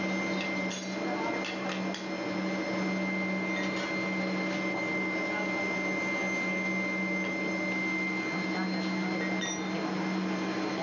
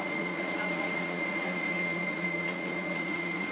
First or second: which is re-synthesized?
second